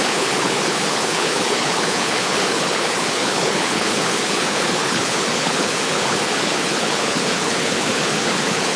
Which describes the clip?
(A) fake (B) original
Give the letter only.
A